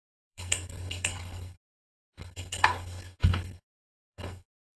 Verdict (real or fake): fake